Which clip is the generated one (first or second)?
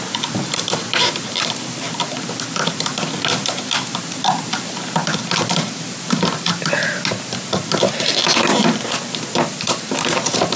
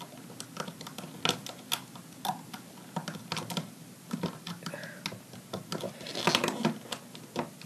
first